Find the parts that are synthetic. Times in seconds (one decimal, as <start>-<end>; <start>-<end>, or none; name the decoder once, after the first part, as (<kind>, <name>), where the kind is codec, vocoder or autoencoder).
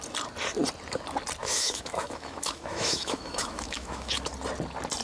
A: 1.4-4.3 (autoencoder, DAC-VAE)